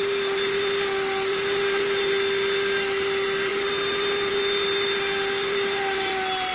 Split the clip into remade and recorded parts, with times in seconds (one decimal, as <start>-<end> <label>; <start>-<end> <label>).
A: 0.0-6.5 recorded